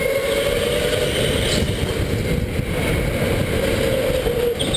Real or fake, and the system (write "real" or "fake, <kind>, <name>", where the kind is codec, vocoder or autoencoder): real